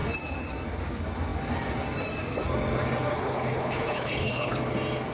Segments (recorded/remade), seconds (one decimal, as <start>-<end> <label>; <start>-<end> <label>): 0.0-3.1 recorded; 3.1-4.5 remade; 4.5-5.1 recorded